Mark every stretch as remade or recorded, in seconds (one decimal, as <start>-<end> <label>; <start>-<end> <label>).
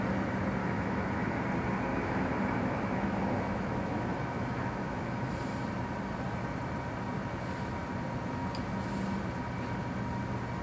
0.0-0.6 recorded; 0.6-1.4 remade; 1.4-1.9 recorded; 1.9-5.3 remade; 5.3-10.6 recorded